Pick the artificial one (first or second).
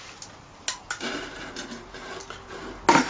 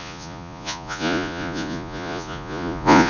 second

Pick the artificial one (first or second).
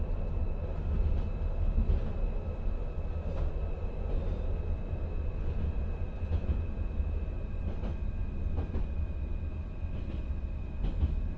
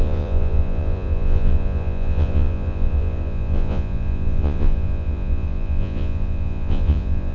second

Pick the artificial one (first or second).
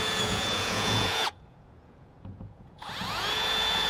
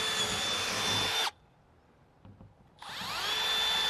first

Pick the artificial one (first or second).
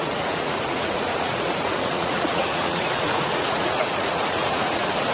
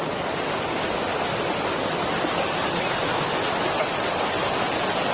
first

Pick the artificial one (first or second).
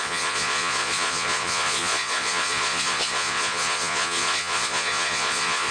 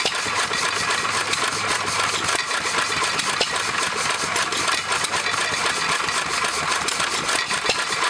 first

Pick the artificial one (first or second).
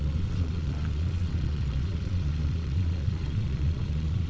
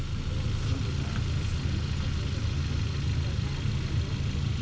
first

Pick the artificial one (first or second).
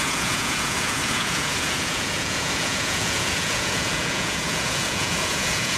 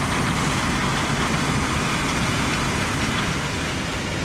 first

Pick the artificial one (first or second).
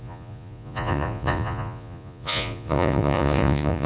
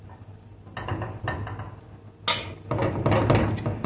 first